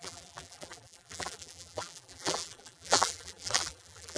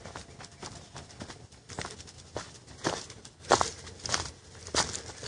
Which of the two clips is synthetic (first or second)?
first